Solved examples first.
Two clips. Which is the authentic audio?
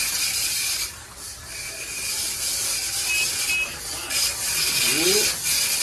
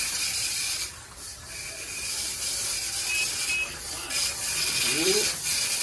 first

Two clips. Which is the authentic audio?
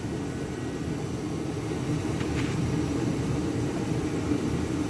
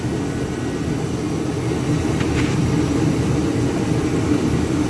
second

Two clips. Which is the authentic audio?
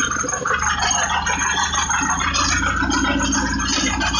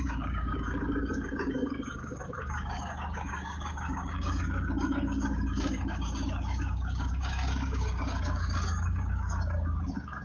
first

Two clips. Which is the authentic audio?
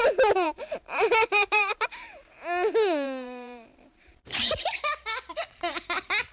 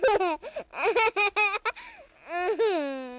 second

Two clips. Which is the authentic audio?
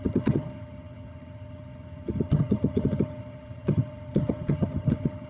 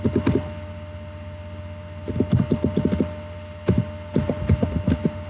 second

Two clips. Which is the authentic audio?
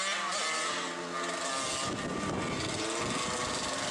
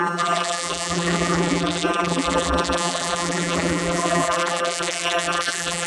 first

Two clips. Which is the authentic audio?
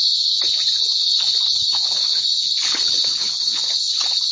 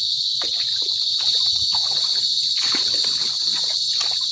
second